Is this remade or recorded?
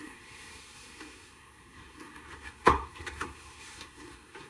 remade